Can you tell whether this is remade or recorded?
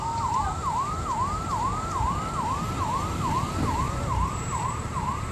recorded